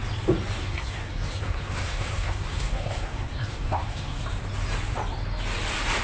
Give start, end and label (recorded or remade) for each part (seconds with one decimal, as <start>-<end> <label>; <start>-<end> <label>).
0.0-0.6 recorded; 0.6-4.2 remade; 4.2-6.0 recorded